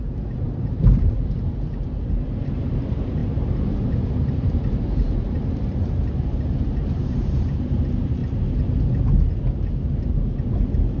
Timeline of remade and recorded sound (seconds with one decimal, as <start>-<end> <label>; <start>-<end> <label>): 0.0-8.2 remade; 8.2-11.0 recorded